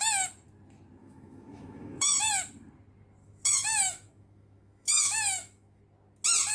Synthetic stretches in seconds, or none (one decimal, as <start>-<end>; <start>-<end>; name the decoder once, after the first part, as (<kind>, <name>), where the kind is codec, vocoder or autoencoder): 1.0-2.2 (autoencoder, DAC-VAE); 3.2-5.8